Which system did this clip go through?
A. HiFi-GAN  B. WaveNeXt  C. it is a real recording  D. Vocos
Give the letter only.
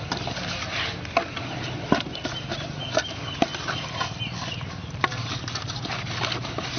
C